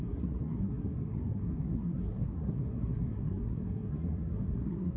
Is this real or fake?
fake